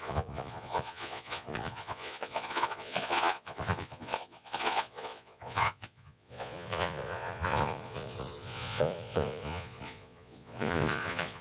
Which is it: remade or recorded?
remade